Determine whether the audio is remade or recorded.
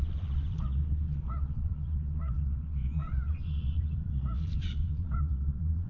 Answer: remade